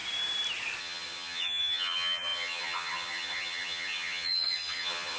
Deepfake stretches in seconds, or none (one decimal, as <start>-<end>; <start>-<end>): 0.8-5.2